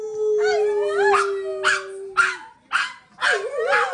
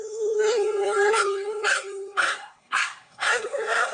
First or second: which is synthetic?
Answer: second